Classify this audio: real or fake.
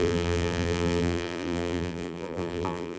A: fake